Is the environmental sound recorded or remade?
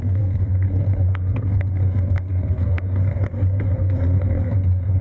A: remade